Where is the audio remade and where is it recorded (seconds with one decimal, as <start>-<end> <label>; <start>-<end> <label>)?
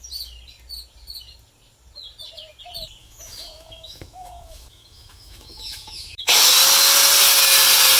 0.0-3.0 recorded; 3.0-6.5 remade; 6.5-8.0 recorded